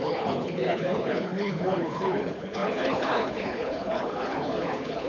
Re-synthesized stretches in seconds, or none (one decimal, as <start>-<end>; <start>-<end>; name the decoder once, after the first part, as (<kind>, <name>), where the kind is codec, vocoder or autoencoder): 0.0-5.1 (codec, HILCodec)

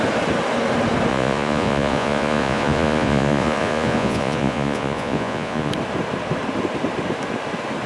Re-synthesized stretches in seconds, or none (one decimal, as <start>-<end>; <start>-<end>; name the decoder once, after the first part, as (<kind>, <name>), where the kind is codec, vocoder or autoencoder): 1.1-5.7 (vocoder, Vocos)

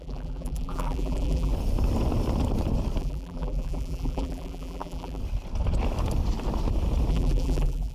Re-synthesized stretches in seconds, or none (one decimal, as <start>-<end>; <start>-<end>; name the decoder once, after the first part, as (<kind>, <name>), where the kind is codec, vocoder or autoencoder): 0.0-1.5 (vocoder, BigVGAN v2); 3.0-5.2; 7.1-7.9

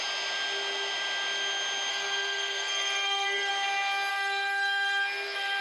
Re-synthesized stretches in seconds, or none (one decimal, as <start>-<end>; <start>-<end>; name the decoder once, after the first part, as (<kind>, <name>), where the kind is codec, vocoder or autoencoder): 1.9-3.5 (codec, SNAC); 4.1-5.6

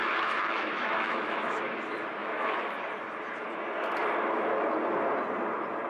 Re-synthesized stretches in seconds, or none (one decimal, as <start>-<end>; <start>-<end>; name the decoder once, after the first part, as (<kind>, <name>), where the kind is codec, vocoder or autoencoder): 0.0-1.6 (autoencoder, DAC-VAE); 2.2-2.8

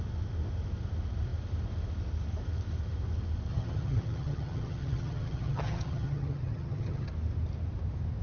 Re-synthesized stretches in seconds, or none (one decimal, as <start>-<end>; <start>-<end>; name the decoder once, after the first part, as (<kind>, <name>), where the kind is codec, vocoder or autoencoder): 3.5-7.1 (vocoder, HiFi-GAN)

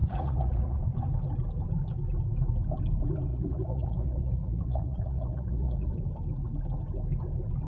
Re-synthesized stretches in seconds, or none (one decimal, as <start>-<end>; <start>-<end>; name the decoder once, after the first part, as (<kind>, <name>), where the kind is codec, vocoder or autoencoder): 0.0-0.8 (vocoder, Vocos); 3.3-5.9

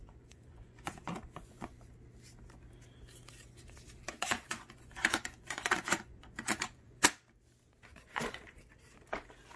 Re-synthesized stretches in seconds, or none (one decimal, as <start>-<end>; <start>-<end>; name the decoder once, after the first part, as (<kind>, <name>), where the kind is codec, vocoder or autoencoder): 0.0-1.9 (vocoder, Vocos); 4.1-7.0; 7.9-8.6